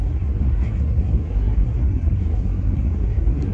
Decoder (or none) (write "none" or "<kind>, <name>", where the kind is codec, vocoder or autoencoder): codec, SNAC